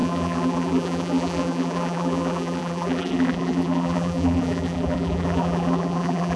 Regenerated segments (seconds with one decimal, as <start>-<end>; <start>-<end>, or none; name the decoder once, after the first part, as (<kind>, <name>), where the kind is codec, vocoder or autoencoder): 0.0-6.4 (vocoder, BigVGAN v2)